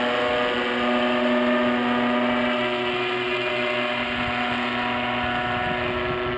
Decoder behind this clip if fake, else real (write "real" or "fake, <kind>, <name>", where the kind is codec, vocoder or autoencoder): real